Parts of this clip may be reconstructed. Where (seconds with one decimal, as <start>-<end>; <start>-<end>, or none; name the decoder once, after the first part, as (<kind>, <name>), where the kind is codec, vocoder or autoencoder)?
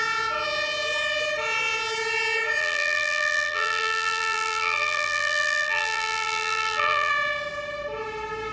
2.6-7.1 (vocoder, BigVGAN v2)